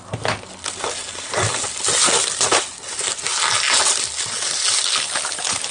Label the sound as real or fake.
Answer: real